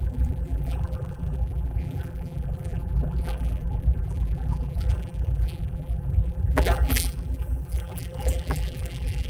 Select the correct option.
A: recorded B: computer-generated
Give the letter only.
B